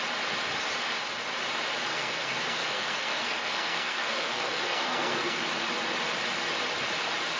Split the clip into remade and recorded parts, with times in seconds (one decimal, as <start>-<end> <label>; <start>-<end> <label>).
0.0-1.9 recorded; 1.9-5.4 remade; 5.4-7.4 recorded